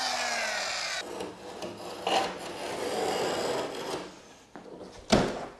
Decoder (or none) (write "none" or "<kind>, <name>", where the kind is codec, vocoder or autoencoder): none